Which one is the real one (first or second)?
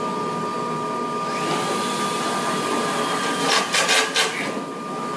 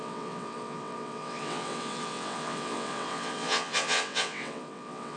first